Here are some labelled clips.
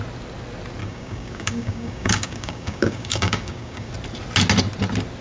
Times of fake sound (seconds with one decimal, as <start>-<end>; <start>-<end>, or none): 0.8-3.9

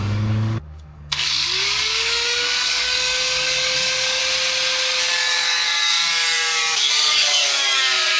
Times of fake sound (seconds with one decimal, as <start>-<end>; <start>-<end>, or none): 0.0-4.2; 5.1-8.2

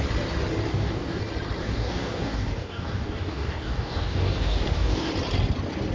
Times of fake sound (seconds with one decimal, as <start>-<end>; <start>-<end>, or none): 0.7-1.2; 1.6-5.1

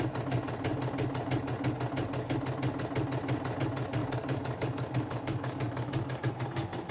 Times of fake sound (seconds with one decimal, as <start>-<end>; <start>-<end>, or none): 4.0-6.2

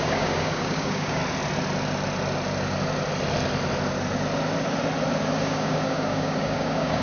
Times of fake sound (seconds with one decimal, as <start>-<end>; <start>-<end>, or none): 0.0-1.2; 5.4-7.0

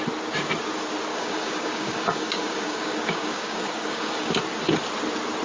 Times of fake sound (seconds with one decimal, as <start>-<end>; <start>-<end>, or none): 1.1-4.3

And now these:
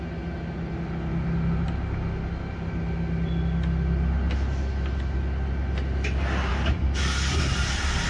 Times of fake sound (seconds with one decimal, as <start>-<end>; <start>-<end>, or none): 6.5-7.4

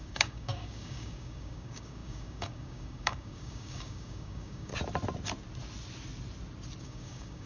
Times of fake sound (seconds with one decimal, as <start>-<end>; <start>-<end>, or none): 0.0-4.7; 6.8-7.5